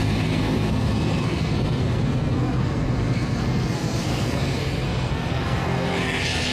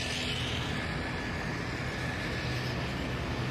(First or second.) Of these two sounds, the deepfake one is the first